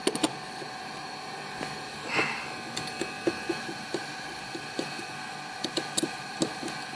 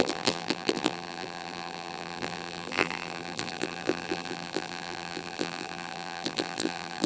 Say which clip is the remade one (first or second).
second